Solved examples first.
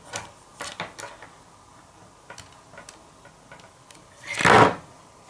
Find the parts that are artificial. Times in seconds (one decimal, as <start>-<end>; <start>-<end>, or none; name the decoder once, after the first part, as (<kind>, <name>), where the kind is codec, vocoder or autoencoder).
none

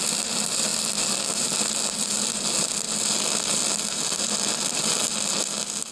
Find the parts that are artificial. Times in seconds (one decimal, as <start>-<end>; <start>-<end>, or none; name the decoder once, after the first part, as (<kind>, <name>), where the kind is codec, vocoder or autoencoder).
none

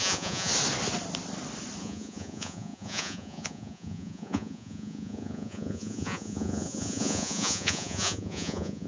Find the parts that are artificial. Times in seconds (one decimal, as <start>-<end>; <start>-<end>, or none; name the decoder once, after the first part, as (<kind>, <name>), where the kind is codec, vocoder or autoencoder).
0.0-0.5 (vocoder, Vocos); 1.8-8.9

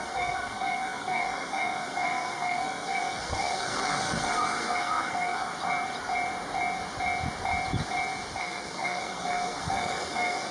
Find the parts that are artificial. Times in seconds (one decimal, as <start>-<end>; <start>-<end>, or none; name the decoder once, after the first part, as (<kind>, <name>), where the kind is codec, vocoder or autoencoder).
0.0-5.5 (codec, SNAC); 8.4-10.5